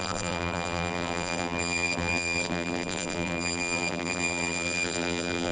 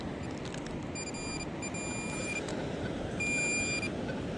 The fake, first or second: first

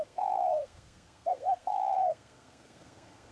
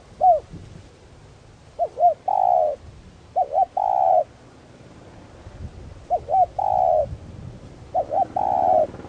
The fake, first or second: first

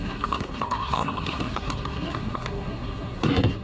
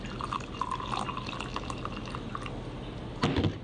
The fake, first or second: first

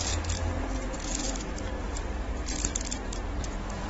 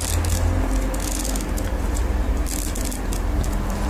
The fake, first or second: first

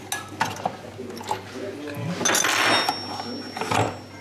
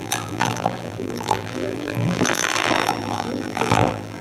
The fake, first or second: second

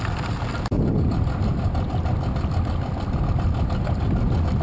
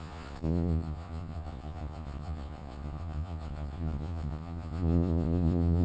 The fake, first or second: second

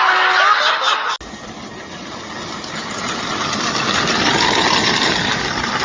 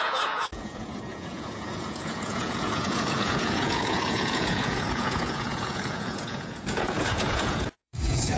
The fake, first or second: second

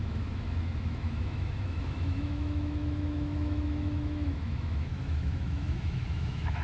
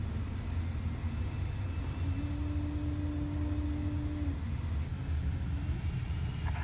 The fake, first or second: first